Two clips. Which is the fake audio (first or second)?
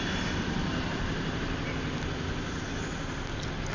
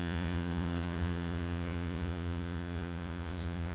second